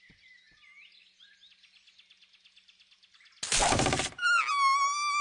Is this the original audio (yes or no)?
yes